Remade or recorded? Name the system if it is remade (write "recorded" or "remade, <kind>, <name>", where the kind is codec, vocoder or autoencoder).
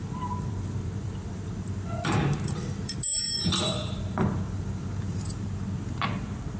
remade, vocoder, BigVGAN v2